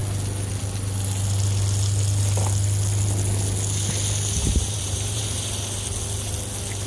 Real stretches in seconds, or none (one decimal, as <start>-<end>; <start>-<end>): 0.0-4.4; 5.2-6.9